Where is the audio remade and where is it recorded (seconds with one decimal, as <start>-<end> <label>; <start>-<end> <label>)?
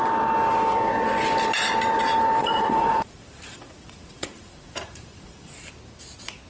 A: 0.0-2.4 recorded; 2.4-5.5 remade; 5.5-6.5 recorded